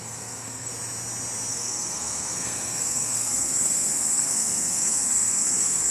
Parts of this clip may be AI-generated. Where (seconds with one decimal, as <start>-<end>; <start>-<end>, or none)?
0.0-0.7; 1.5-5.9